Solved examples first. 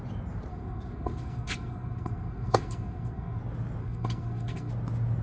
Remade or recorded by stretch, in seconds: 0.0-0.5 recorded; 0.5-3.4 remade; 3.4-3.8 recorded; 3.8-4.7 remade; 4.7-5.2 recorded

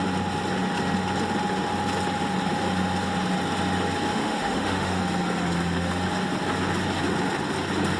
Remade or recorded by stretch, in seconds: 0.0-4.1 recorded; 4.1-5.0 remade; 5.0-8.0 recorded

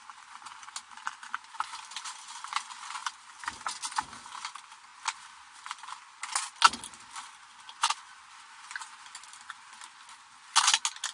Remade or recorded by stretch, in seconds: 0.0-11.1 recorded